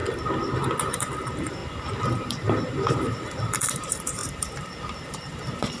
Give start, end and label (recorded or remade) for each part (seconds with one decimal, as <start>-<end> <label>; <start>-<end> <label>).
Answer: 0.0-0.9 recorded; 0.9-1.6 remade; 1.6-2.1 recorded; 2.1-5.8 remade